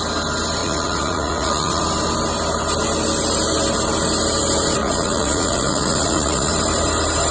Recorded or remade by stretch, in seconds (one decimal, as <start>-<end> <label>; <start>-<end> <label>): 0.0-0.6 recorded; 0.6-1.8 remade; 1.8-4.8 recorded; 4.8-6.5 remade; 6.5-7.3 recorded